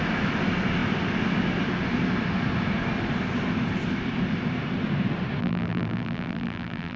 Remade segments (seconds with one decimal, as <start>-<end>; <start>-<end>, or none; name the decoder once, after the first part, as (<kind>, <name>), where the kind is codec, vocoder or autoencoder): 5.4-7.0 (vocoder, BigVGAN v2)